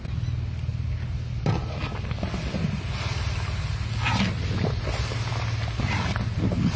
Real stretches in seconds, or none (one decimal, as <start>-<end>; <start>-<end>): 0.0-6.8